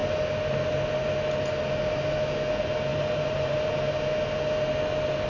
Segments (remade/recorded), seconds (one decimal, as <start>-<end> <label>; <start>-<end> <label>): 0.0-2.9 recorded; 2.9-3.7 remade; 3.7-5.3 recorded